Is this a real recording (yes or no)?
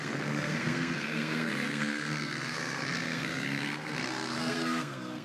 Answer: no